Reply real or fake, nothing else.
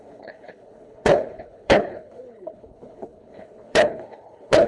fake